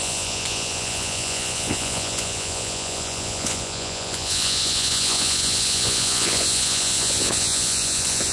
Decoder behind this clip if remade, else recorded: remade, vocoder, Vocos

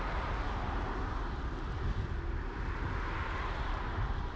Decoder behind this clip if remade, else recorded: recorded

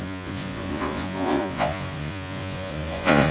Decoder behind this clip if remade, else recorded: remade, vocoder, Vocos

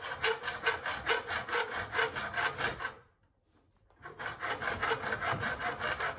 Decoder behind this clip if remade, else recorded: recorded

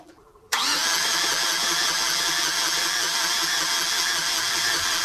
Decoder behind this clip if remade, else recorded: remade, vocoder, BigVGAN v2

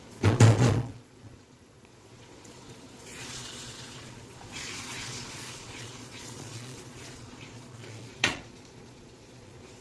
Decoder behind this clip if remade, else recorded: remade, vocoder, Vocos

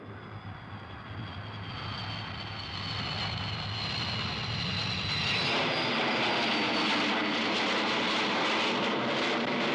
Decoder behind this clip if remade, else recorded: recorded